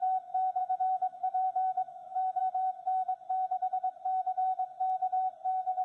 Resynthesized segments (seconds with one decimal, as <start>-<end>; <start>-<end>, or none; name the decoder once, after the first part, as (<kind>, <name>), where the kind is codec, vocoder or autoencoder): 0.6-2.4 (autoencoder, DAC-VAE)